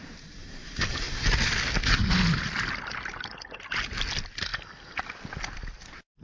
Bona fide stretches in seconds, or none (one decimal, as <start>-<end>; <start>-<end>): 0.0-6.2